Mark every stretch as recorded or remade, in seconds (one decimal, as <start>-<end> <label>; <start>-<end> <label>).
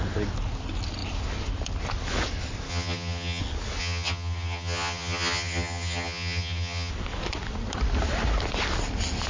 0.0-2.7 recorded; 2.7-3.4 remade; 3.4-3.8 recorded; 3.8-6.9 remade; 6.9-9.3 recorded